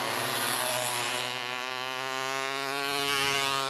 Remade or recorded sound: recorded